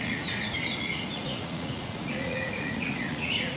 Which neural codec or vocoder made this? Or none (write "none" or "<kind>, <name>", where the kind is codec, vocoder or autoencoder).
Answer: vocoder, Vocos